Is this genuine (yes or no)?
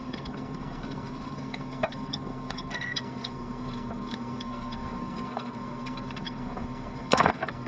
no